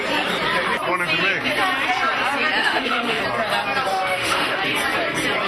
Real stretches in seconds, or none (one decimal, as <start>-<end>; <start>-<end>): 0.0-2.6; 3.2-3.9; 4.6-5.5